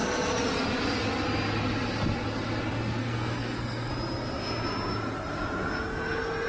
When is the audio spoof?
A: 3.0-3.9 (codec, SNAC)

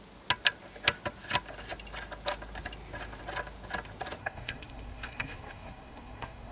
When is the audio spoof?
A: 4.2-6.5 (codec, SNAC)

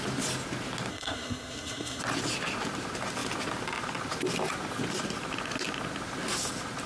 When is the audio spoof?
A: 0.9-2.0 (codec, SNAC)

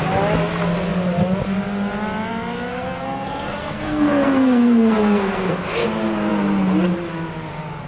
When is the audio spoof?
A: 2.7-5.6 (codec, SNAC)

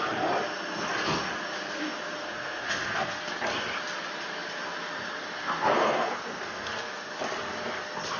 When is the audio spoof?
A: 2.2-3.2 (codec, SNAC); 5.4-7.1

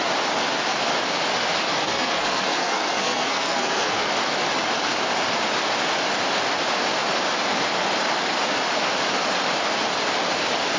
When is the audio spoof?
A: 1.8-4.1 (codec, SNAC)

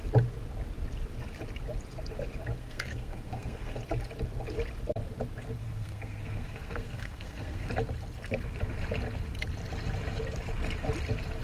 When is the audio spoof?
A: 2.6-3.8 (codec, SNAC); 5.6-7.7